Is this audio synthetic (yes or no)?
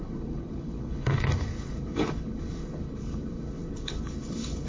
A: yes